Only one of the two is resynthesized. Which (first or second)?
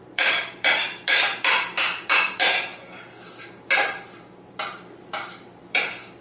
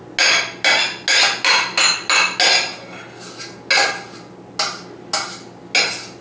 first